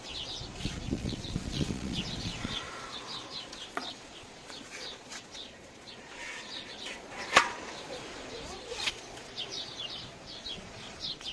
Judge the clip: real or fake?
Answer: fake